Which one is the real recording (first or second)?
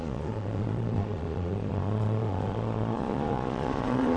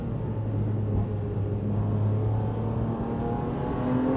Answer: second